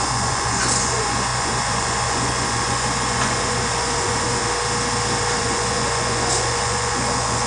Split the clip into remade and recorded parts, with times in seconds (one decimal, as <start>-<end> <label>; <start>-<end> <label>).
0.0-4.4 remade; 4.4-5.4 recorded; 5.4-7.5 remade